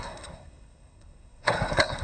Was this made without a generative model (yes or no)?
no